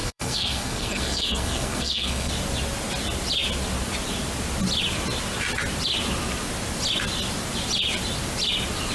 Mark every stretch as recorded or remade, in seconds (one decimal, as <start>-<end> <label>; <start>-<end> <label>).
0.0-2.3 remade; 2.3-8.9 recorded